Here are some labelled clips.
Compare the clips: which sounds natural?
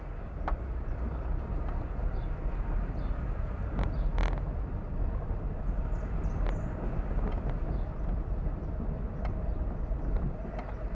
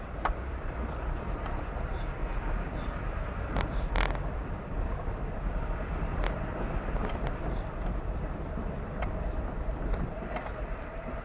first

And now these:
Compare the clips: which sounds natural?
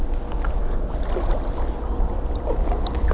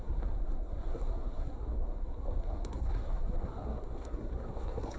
first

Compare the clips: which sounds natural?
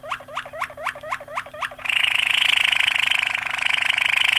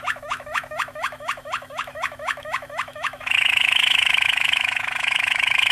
first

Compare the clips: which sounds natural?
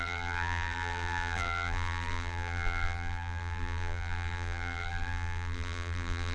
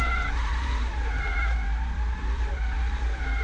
second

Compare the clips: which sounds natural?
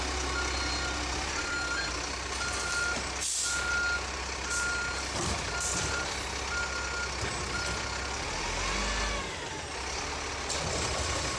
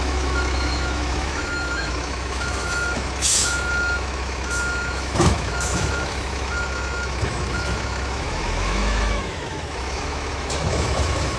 first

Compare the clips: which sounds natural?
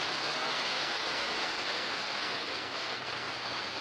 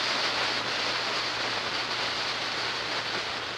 second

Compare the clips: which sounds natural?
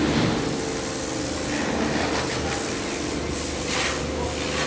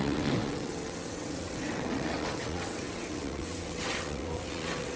first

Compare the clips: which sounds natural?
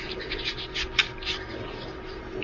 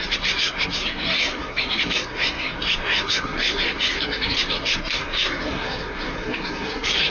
first